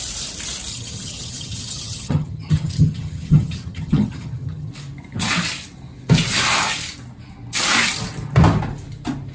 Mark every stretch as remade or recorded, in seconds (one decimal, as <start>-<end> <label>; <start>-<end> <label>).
0.0-0.7 recorded; 0.7-4.7 remade; 4.7-9.3 recorded